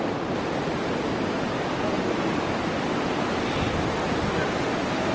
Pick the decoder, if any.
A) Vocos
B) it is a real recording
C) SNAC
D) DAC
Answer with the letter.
B